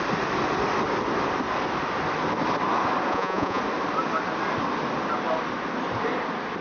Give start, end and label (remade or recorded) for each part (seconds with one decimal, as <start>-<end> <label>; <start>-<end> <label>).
0.0-3.1 recorded; 3.1-3.6 remade; 3.6-6.6 recorded